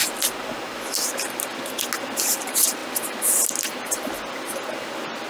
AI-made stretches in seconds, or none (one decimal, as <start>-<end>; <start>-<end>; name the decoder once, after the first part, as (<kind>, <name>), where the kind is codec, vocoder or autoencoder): none